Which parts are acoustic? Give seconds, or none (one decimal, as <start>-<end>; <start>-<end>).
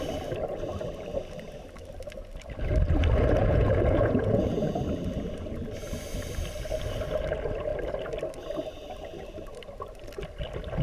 0.0-3.4; 4.8-10.8